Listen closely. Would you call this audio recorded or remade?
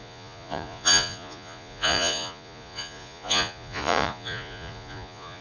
remade